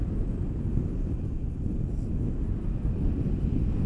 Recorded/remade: recorded